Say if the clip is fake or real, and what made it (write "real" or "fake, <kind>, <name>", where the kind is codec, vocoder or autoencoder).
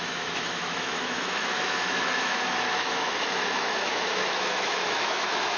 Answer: fake, autoencoder, DAC-VAE